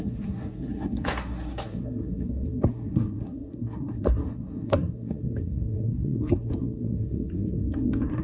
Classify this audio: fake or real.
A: fake